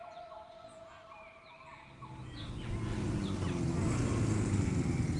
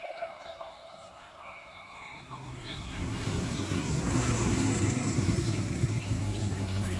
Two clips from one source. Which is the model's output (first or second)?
second